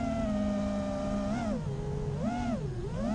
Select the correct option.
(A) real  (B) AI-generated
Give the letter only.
A